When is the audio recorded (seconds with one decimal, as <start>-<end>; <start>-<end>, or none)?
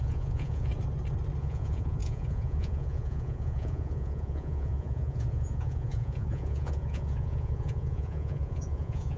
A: 0.7-1.4